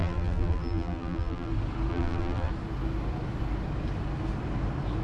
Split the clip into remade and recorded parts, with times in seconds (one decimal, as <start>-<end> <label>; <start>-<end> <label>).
0.0-1.5 remade; 1.5-1.9 recorded; 1.9-2.5 remade; 2.5-5.0 recorded